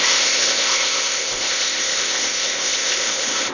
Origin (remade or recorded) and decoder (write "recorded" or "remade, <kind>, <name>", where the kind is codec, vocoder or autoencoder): remade, codec, ZipCodec